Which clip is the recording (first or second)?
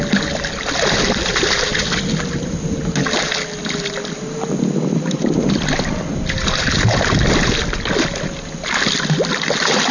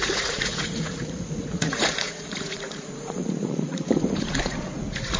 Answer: first